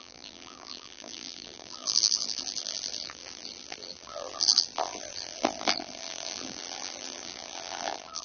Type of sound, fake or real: fake